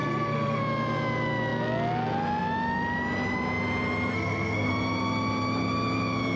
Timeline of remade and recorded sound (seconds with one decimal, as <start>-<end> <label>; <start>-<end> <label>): 0.0-0.6 remade; 0.6-4.1 recorded; 4.1-4.7 remade; 4.7-6.4 recorded